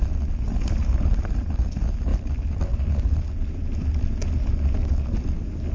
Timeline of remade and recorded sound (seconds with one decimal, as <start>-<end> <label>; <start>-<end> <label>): 0.0-5.7 recorded